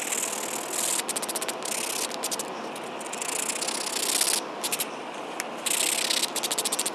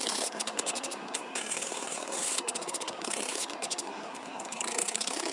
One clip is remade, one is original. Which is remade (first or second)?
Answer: second